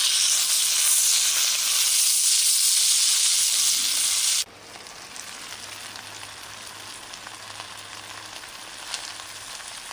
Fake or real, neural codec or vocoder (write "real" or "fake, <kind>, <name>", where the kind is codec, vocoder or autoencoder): real